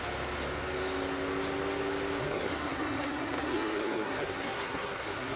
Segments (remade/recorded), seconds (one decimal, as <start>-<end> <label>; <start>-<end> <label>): 0.0-2.2 recorded; 2.2-5.4 remade